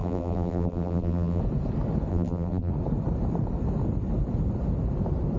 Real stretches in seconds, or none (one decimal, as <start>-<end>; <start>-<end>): 1.4-2.1; 2.7-5.4